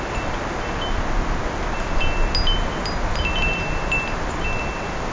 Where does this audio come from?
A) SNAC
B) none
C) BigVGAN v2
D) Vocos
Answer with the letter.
B